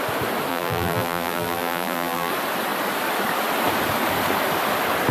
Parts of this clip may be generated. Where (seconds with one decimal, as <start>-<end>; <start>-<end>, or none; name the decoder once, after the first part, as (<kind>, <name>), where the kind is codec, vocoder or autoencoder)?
0.5-2.3 (vocoder, BigVGAN v2)